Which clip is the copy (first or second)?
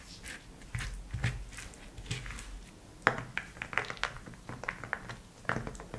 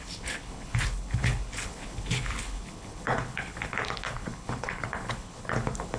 second